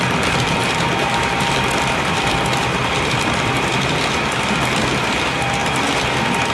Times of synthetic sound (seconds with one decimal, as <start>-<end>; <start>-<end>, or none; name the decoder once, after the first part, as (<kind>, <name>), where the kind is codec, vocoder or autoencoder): 0.6-4.0 (vocoder, BigVGAN v2)